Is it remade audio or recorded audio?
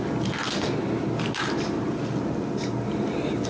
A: recorded